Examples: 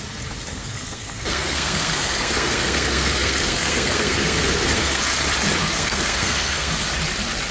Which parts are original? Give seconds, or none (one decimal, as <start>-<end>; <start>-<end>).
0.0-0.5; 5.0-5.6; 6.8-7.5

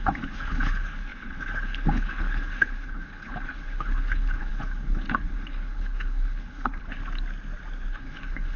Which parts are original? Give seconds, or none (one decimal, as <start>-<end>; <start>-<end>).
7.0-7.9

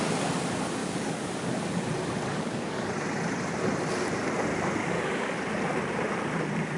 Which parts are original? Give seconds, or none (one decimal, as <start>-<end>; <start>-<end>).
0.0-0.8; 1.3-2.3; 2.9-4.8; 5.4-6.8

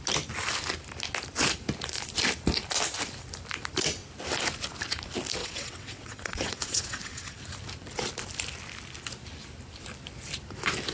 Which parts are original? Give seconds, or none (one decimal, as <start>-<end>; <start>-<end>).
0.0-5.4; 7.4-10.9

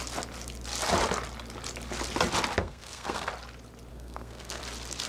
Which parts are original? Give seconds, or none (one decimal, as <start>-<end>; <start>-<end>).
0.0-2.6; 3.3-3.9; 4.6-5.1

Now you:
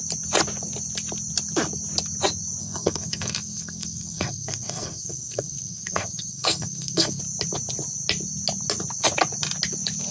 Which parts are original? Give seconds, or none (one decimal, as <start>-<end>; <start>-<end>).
0.0-2.6; 7.2-10.1